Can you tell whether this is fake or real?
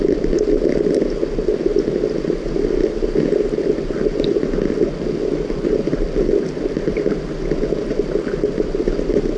real